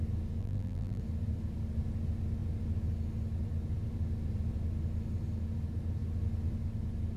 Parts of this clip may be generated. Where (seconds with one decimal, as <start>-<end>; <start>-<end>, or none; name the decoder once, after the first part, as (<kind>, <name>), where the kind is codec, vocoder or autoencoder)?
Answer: 0.4-1.0 (vocoder, BigVGAN v2)